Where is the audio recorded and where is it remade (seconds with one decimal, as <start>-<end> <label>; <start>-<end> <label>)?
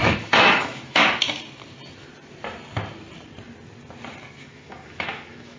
0.0-1.0 remade; 1.0-4.4 recorded; 4.4-5.6 remade